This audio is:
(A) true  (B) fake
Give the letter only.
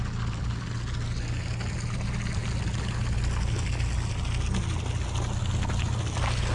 A